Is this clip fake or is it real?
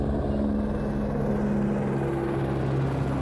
real